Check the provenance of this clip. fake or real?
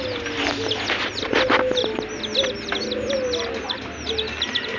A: real